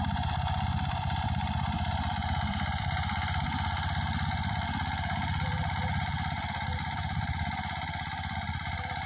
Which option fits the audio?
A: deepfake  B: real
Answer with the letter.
A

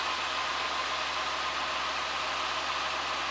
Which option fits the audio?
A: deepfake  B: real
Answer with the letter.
B